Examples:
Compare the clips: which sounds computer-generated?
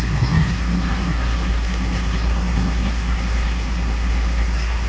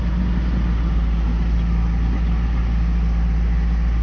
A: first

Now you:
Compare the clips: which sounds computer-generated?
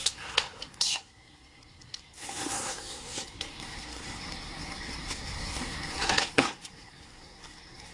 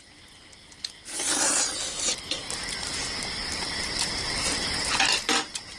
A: first